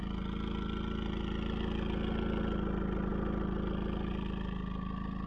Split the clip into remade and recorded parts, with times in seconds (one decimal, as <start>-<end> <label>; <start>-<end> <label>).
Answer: 0.0-5.3 recorded